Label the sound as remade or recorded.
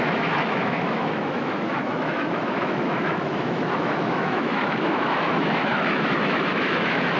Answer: remade